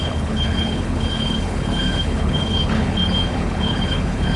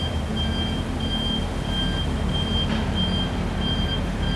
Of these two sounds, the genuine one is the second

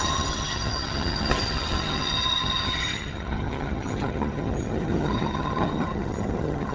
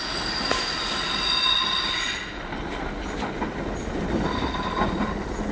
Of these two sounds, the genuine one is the second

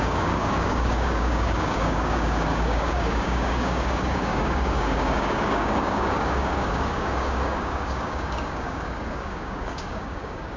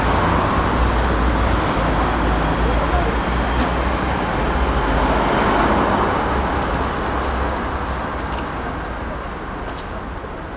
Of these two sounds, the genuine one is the second